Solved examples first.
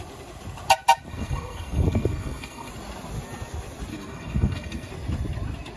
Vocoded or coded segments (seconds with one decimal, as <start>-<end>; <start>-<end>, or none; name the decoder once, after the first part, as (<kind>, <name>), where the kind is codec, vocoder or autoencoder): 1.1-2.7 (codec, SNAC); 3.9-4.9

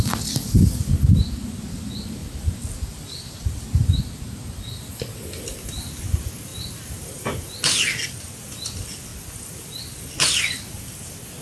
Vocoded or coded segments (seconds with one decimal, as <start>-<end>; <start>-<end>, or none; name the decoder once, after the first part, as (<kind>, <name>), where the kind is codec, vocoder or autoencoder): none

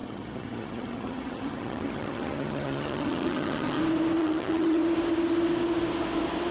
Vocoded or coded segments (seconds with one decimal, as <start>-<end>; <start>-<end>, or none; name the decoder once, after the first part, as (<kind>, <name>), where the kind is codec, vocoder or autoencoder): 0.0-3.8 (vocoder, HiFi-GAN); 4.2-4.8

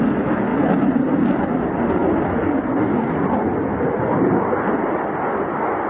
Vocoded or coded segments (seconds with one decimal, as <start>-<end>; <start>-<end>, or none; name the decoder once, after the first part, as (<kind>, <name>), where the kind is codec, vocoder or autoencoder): none

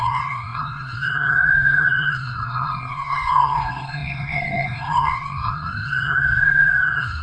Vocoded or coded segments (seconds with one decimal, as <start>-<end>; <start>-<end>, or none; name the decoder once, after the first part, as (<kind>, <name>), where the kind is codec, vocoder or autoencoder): 0.0-7.2 (codec, SNAC)

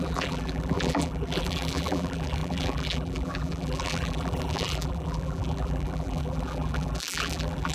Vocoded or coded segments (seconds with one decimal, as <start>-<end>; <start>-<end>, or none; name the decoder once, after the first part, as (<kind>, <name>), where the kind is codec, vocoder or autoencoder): 0.0-7.7 (vocoder, BigVGAN v2)

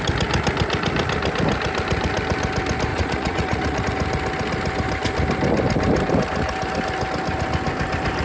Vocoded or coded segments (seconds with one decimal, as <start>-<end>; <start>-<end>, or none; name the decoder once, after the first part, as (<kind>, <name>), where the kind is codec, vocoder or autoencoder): 2.9-3.8 (vocoder, Vocos)

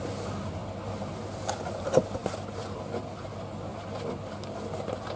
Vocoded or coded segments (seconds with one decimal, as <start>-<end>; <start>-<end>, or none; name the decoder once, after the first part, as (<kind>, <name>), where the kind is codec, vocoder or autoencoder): none